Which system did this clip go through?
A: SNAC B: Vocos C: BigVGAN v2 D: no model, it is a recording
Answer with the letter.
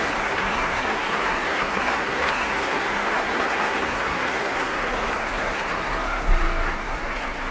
A